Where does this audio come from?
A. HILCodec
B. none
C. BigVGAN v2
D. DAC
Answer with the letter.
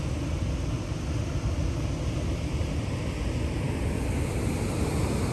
B